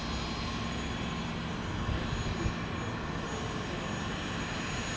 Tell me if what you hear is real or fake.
real